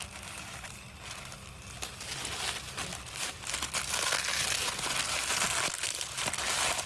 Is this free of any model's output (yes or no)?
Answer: yes